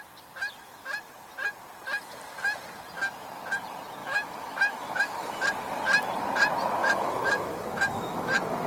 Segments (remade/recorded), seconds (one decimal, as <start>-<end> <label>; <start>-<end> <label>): 0.0-4.0 recorded; 4.0-5.4 remade; 5.4-6.8 recorded; 6.8-8.7 remade